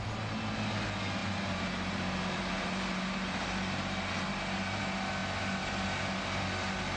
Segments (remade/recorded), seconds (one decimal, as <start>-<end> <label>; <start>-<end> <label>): 0.0-1.2 recorded; 1.2-4.8 remade; 4.8-7.0 recorded